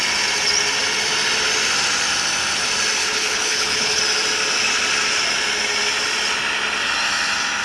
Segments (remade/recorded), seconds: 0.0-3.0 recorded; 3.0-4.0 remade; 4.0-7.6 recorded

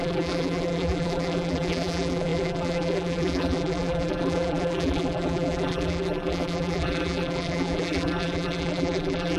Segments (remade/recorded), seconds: 0.0-9.4 remade

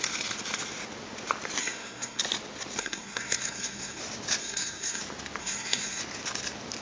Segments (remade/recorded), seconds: 0.0-1.6 recorded; 1.6-2.2 remade; 2.2-2.8 recorded; 2.8-4.0 remade; 4.0-4.4 recorded; 4.4-5.0 remade; 5.0-5.4 recorded; 5.4-6.0 remade; 6.0-6.8 recorded

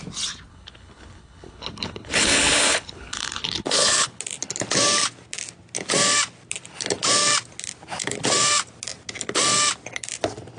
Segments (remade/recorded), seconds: 0.0-0.5 recorded; 0.5-4.2 remade; 4.2-10.6 recorded